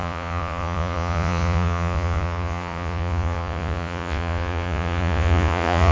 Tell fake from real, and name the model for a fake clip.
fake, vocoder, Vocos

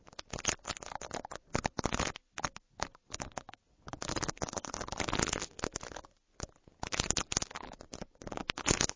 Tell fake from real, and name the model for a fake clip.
real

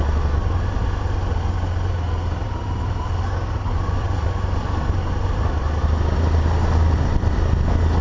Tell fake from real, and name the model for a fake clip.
real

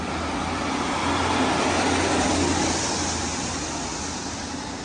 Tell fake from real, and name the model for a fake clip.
real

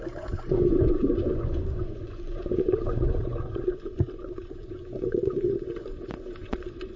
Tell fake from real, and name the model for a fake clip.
fake, vocoder, Vocos